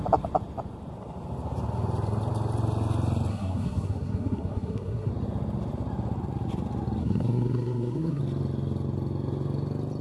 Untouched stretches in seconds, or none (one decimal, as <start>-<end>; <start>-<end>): 0.0-3.3; 5.1-7.0; 8.2-10.0